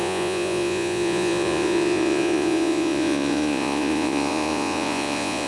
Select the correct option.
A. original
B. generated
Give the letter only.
B